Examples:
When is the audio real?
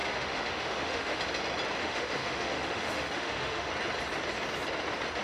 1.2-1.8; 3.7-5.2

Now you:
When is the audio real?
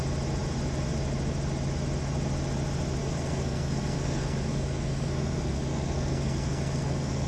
0.0-3.0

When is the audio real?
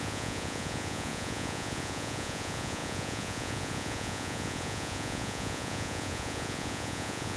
none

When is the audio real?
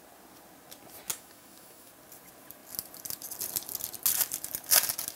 0.0-1.1; 1.9-5.2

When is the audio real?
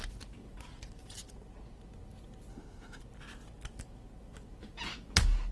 0.0-2.5; 3.0-5.5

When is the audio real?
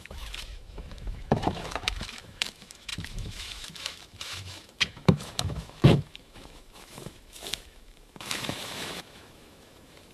none